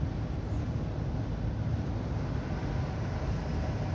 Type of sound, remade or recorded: recorded